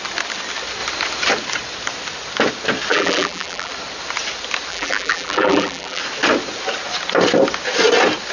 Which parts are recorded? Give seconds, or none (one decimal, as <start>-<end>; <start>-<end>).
0.0-2.9; 3.7-4.7; 6.0-8.3